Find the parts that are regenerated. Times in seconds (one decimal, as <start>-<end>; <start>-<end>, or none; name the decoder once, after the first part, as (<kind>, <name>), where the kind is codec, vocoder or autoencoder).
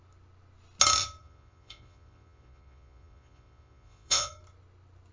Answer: 1.2-4.3 (vocoder, Vocos)